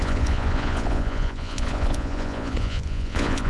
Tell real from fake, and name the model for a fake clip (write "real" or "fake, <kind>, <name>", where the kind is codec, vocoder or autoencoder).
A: fake, vocoder, Vocos